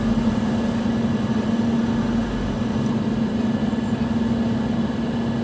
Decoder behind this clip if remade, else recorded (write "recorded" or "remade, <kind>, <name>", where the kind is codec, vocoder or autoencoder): recorded